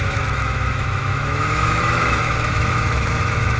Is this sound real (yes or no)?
no